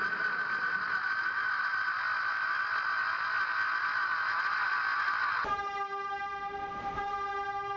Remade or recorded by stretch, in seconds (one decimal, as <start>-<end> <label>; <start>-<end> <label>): 0.0-7.8 recorded